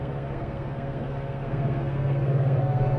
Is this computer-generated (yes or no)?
yes